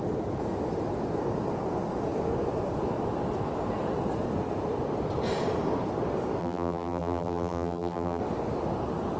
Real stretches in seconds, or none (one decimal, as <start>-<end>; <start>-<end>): 0.0-6.4; 8.2-9.2